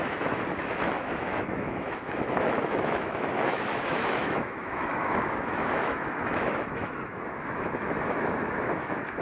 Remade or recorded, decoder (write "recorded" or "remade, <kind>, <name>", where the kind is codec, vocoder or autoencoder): remade, autoencoder, DAC-VAE